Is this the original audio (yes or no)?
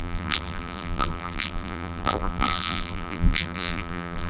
no